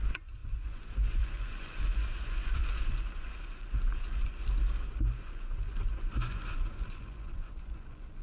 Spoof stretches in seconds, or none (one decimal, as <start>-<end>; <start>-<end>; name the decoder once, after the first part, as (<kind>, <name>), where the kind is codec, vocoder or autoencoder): 0.0-4.4 (vocoder, Vocos); 5.0-8.2